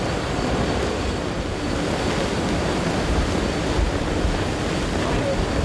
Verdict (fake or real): real